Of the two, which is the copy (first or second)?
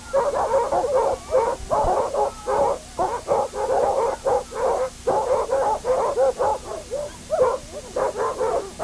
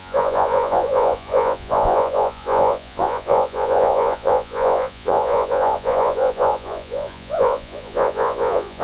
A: second